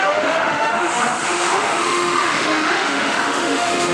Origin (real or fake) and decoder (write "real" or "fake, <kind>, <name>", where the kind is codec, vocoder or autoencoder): fake, autoencoder, DAC-VAE